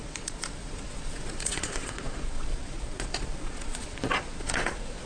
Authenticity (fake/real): fake